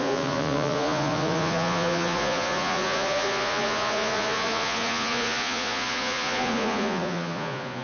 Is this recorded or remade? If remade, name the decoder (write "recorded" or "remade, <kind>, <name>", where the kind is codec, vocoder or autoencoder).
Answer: remade, vocoder, Vocos